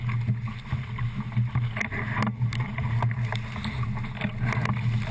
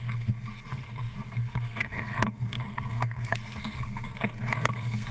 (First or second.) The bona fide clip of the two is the first